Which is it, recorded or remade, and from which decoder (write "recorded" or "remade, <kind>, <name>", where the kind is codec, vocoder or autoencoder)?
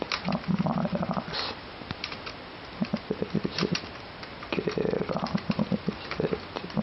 recorded